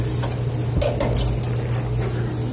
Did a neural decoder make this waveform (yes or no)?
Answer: no